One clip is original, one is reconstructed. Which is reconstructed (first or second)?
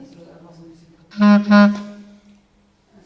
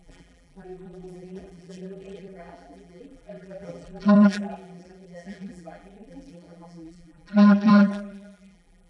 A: second